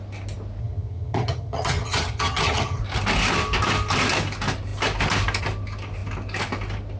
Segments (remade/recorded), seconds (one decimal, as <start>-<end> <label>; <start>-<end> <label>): 0.0-0.6 recorded; 0.6-2.8 remade; 2.8-7.0 recorded